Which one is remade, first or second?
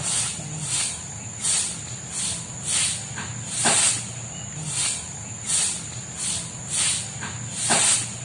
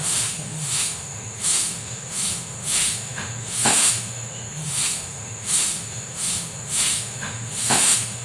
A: second